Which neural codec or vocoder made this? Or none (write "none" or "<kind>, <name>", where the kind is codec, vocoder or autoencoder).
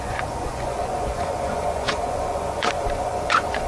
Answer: vocoder, Vocos